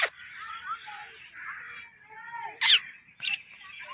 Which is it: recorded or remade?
recorded